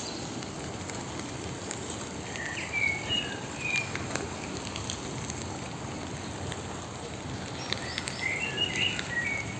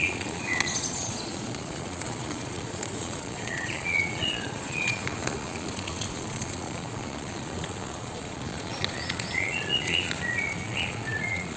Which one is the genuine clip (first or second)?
first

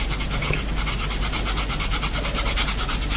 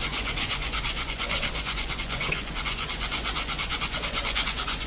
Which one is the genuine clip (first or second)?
first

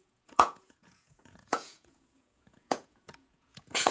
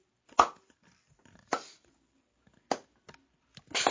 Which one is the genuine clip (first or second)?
second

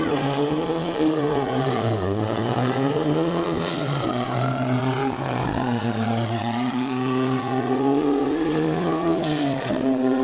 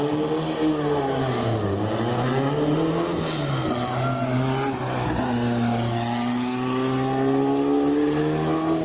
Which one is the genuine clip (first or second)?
second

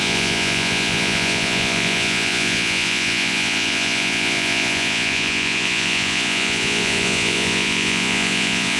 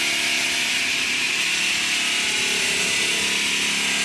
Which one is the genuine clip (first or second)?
second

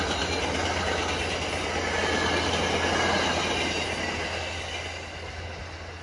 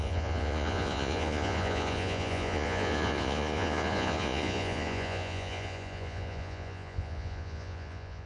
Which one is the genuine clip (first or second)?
first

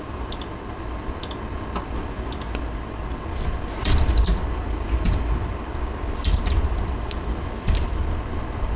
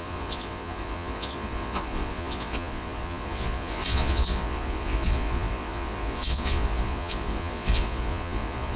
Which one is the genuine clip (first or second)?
first